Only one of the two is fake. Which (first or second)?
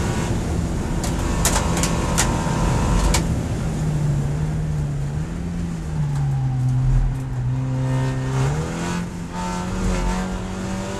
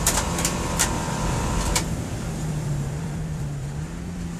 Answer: second